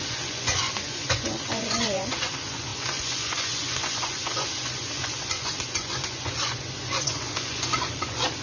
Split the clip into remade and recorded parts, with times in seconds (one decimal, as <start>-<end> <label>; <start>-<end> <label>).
0.0-8.4 remade